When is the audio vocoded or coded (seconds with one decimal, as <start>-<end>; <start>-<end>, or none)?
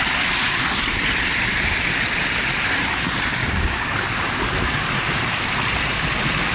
3.4-3.9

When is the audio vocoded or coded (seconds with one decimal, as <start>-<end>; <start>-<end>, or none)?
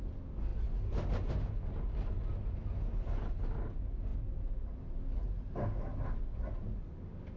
none